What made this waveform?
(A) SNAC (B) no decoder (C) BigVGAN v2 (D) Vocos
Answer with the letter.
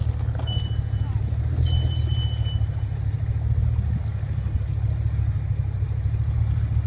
B